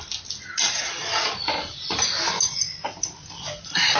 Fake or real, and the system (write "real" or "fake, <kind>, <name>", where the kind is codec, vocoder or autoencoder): real